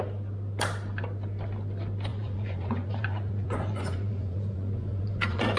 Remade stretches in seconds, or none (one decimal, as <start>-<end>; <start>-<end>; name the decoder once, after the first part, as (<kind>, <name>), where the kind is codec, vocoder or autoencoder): 2.1-5.6 (vocoder, Vocos)